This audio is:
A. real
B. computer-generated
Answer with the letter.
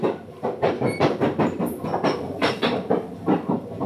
B